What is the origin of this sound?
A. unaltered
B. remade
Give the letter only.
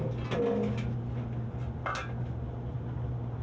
A